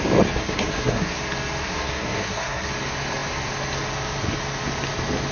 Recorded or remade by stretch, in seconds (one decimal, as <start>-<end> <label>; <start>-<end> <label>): 0.0-0.4 recorded; 0.4-1.2 remade; 1.2-1.6 recorded; 1.6-2.7 remade; 2.7-5.3 recorded